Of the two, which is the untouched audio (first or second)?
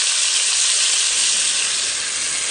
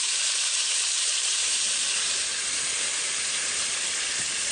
first